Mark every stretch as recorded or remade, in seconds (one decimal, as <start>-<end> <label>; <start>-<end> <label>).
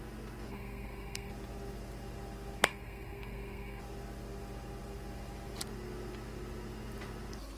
0.0-0.5 recorded; 0.5-1.3 remade; 1.3-2.6 recorded; 2.6-3.8 remade; 3.8-7.6 recorded